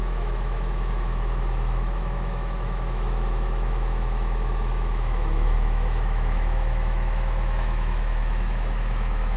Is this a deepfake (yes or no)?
yes